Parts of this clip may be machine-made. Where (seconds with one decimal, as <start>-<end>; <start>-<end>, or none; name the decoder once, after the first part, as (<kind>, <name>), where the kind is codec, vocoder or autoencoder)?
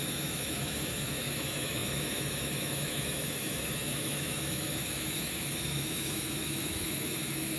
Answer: 0.0-7.6 (autoencoder, DAC-VAE)